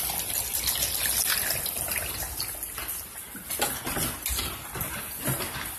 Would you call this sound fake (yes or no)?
no